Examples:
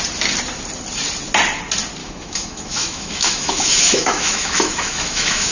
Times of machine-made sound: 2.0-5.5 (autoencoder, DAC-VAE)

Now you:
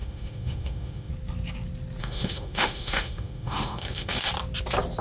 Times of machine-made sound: 0.0-1.1 (autoencoder, DAC-VAE); 2.0-4.3